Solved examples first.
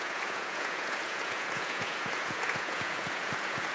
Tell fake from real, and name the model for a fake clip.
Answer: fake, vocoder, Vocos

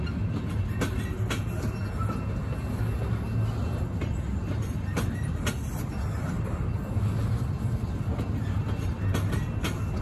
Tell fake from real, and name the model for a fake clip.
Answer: real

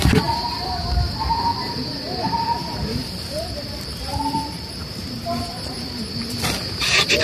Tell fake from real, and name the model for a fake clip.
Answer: fake, vocoder, BigVGAN v2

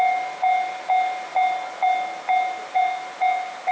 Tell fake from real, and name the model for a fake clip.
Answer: real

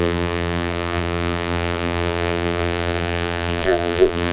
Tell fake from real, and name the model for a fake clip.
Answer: fake, vocoder, BigVGAN v2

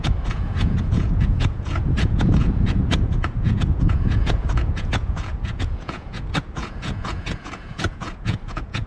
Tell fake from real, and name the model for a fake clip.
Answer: fake, vocoder, Vocos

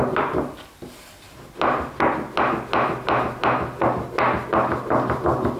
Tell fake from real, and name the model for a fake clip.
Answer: real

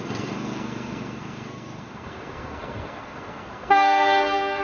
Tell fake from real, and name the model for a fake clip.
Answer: fake, codec, SNAC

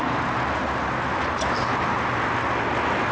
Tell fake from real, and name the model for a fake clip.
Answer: real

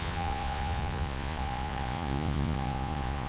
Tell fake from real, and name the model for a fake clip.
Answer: fake, vocoder, Vocos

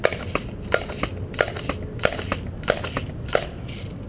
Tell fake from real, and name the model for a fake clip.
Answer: real